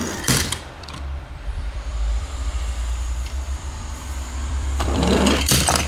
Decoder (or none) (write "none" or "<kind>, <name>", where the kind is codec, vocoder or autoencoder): vocoder, BigVGAN v2